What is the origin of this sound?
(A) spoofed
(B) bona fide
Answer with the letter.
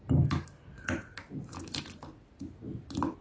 B